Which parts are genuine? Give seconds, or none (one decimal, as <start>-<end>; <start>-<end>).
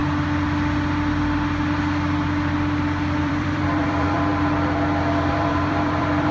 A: 0.0-3.2; 4.3-5.3